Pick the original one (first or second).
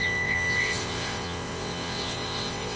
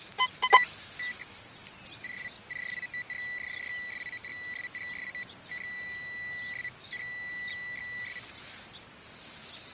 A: second